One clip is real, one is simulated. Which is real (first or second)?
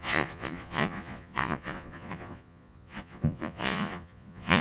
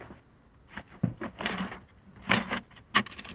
second